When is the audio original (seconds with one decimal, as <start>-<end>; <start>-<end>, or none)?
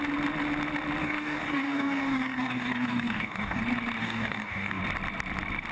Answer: 0.0-1.0; 3.6-4.0; 4.8-5.7